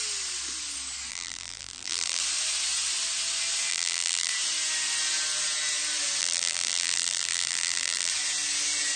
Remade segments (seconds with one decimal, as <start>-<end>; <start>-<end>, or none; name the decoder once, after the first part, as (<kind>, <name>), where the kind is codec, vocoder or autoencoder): 1.1-2.2 (vocoder, BigVGAN v2); 3.7-4.3; 6.2-8.1